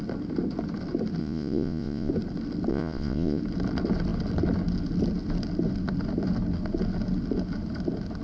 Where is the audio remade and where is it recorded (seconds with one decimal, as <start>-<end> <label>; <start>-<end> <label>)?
0.0-1.2 recorded; 1.2-2.1 remade; 2.1-2.7 recorded; 2.7-3.4 remade; 3.4-8.2 recorded